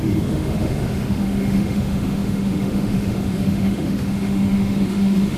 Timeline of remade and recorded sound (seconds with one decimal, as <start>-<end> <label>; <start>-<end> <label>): 0.0-5.4 remade